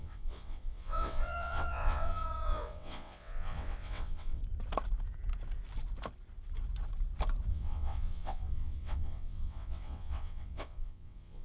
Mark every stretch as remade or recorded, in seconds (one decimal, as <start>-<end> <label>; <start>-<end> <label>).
0.0-4.4 remade; 4.4-7.5 recorded; 7.5-11.4 remade